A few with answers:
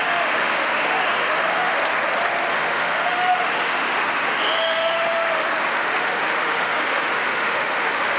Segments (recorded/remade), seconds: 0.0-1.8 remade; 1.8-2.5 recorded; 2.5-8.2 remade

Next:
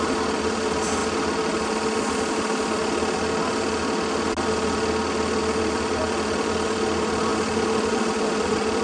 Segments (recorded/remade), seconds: 0.0-1.0 remade; 1.0-5.4 recorded; 5.4-7.3 remade; 7.3-7.9 recorded; 7.9-8.8 remade

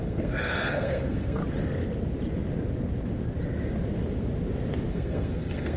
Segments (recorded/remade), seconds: 0.0-1.4 remade; 1.4-4.9 recorded; 4.9-5.8 remade